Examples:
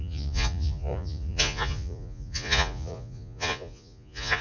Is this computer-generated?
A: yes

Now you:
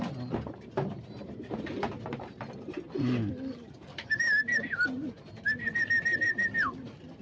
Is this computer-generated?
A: yes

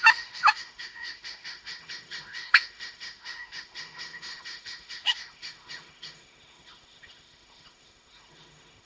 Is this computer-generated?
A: yes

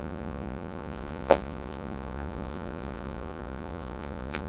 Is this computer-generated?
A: yes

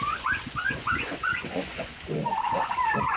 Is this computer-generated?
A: yes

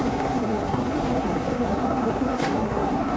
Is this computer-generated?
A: yes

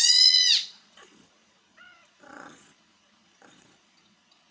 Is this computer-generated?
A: yes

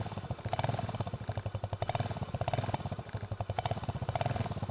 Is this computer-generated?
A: no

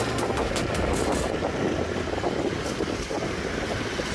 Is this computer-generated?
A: no